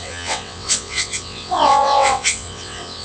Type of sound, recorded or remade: remade